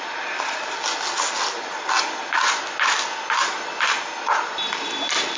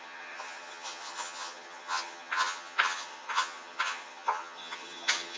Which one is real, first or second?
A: first